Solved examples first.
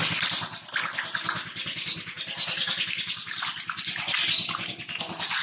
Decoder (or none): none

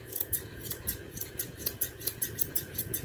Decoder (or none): vocoder, Vocos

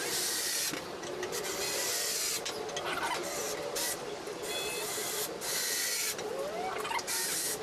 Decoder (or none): none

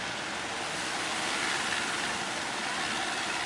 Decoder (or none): none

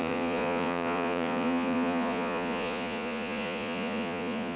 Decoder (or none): vocoder, Vocos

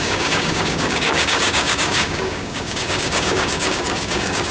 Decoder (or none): codec, DAC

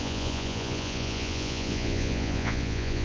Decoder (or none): vocoder, Vocos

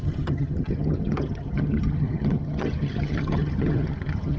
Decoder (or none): vocoder, HiFi-GAN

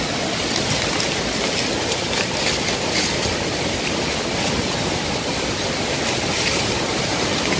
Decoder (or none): none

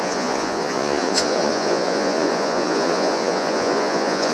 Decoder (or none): vocoder, Vocos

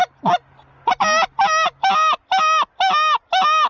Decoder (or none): none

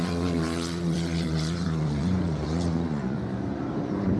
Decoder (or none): vocoder, Vocos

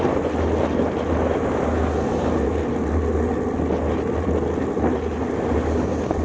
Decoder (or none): none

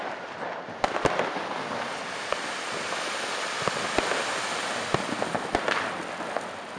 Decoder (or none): none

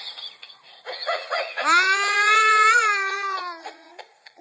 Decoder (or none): vocoder, Vocos